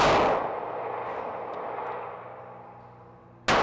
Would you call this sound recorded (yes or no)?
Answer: yes